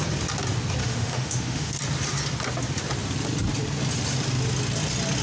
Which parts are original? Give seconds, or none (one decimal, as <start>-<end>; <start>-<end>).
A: 0.0-0.8; 1.7-5.2